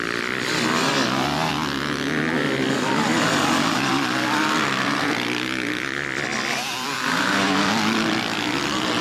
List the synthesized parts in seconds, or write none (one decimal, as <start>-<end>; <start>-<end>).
6.3-7.3

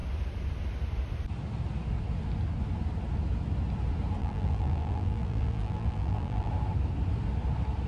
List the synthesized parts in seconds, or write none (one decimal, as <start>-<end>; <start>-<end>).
4.2-6.5

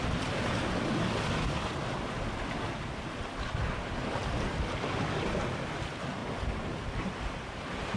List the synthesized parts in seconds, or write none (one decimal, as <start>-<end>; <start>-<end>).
none

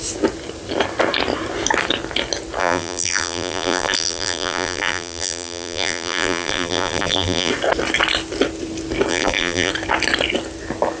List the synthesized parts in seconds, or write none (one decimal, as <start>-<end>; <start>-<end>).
2.6-7.5; 9.1-9.7

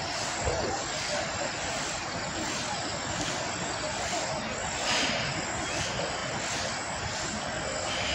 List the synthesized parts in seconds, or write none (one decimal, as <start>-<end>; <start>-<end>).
none